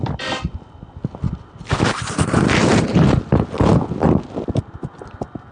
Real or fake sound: real